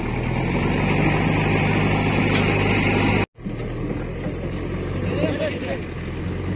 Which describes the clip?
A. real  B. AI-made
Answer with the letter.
A